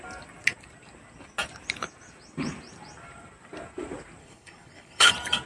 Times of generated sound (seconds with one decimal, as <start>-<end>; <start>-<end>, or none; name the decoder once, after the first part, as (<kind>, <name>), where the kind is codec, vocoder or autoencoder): 4.2-5.1 (codec, HILCodec)